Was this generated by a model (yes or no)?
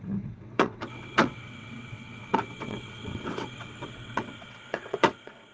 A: yes